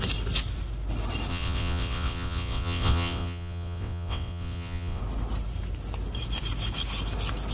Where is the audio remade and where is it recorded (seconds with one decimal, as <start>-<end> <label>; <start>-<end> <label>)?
0.0-1.3 recorded; 1.3-5.0 remade; 5.0-7.5 recorded